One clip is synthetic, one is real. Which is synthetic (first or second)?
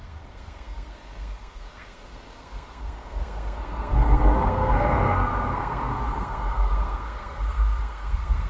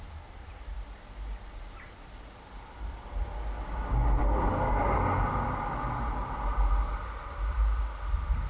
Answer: first